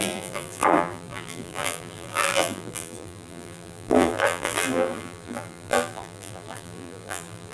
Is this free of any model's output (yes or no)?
no